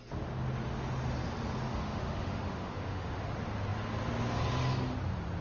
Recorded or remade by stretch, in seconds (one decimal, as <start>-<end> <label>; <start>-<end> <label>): 0.0-1.7 recorded; 1.7-3.3 remade; 3.3-5.4 recorded